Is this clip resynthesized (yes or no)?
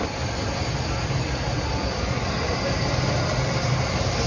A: no